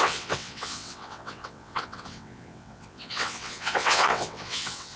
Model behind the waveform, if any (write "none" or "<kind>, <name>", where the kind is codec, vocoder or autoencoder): vocoder, WaveNeXt